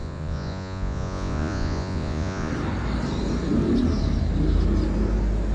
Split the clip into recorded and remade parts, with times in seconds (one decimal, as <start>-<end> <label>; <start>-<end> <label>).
0.0-2.5 remade; 2.5-5.5 recorded